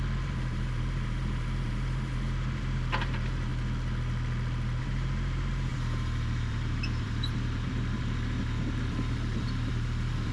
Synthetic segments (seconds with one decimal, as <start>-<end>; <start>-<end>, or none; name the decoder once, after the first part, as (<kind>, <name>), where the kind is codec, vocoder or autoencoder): 0.0-3.5 (vocoder, BigVGAN v2); 4.8-10.3